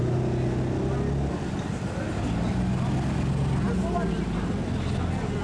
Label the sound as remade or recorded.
recorded